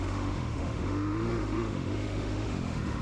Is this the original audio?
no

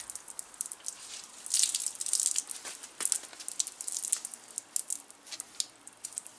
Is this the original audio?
yes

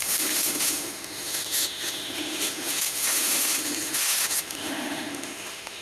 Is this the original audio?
no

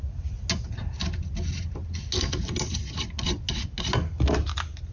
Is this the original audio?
yes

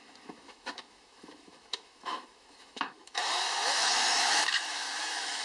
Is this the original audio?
no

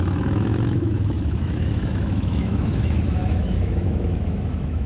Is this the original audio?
no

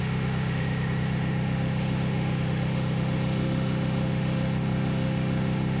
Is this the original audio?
no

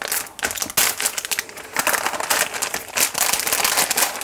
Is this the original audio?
yes